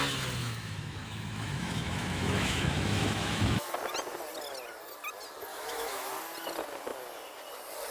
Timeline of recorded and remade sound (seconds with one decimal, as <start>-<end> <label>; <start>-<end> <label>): 0.0-0.4 recorded; 0.4-3.7 remade; 3.7-5.5 recorded; 5.5-6.1 remade; 6.1-7.9 recorded